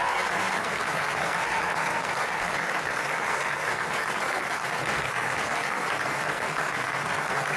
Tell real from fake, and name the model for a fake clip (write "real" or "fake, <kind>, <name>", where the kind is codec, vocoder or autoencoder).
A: fake, codec, SNAC